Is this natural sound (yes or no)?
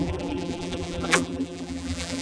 no